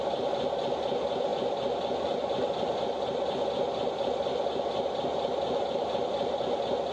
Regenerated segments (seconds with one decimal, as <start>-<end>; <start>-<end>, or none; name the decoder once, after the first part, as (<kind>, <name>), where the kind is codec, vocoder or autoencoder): none